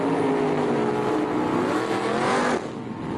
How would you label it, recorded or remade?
recorded